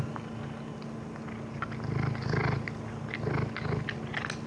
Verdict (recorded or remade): recorded